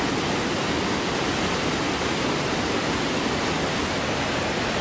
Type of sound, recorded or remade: recorded